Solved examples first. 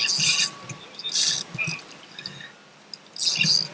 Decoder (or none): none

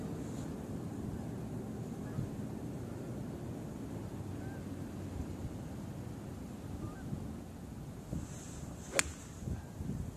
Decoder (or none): none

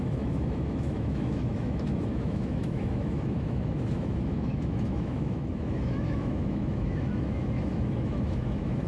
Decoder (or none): autoencoder, DAC-VAE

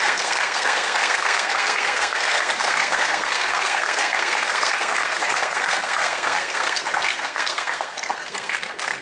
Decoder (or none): codec, SNAC